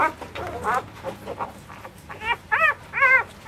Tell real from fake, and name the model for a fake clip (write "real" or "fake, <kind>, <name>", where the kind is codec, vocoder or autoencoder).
real